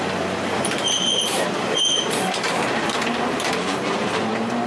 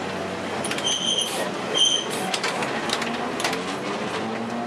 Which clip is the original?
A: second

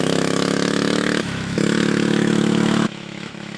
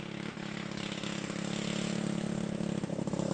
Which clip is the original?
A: second